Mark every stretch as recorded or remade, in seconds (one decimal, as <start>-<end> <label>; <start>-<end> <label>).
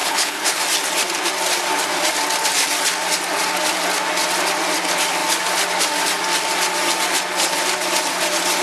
0.0-0.6 remade; 0.6-8.6 recorded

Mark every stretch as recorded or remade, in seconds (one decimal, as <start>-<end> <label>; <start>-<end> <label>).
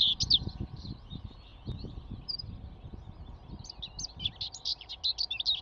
0.0-5.6 recorded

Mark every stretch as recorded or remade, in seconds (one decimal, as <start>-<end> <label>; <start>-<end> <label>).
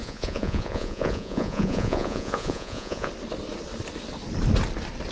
0.0-3.1 remade; 3.1-5.1 recorded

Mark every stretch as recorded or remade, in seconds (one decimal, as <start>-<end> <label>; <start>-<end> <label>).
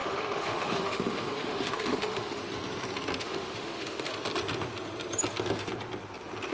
0.0-2.4 remade; 2.4-3.2 recorded; 3.2-4.1 remade; 4.1-6.5 recorded